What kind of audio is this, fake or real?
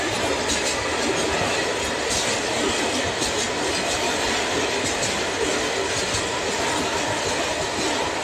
real